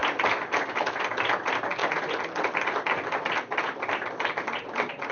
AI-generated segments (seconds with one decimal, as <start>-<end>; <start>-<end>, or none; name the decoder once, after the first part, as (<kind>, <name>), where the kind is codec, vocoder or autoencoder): 1.2-5.1 (vocoder, BigVGAN v2)